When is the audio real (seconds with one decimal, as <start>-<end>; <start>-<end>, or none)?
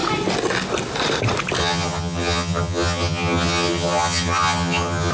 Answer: 0.0-1.6